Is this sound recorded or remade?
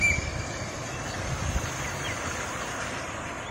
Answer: recorded